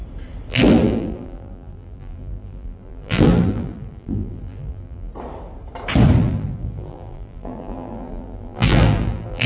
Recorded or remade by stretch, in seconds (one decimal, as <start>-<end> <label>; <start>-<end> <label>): 0.0-0.5 recorded; 0.5-5.1 remade; 5.1-6.2 recorded; 6.2-9.5 remade